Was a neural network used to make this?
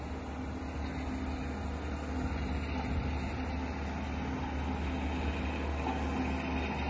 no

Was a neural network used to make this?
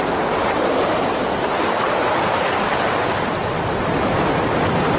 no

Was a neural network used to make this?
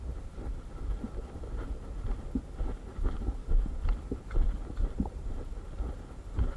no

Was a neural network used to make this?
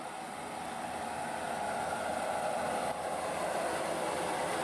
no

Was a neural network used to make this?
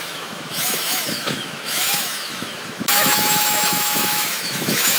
yes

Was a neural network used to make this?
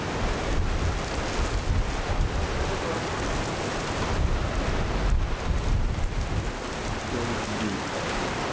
no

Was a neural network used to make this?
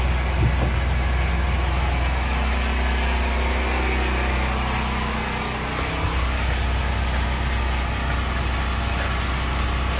no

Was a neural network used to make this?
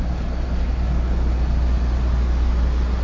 no